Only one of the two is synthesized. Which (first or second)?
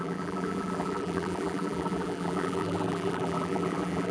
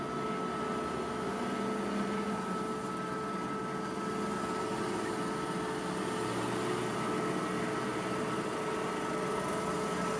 first